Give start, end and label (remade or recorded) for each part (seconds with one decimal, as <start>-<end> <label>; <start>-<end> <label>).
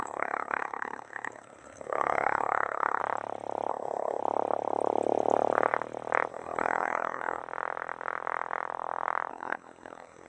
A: 0.0-3.0 remade; 3.0-3.7 recorded; 3.7-4.2 remade; 4.2-6.3 recorded; 6.3-7.4 remade; 7.4-9.3 recorded; 9.3-10.3 remade